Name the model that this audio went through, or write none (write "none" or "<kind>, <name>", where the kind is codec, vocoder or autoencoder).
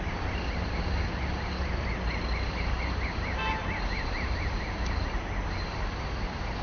none